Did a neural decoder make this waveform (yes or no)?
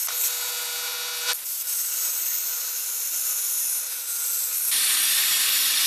no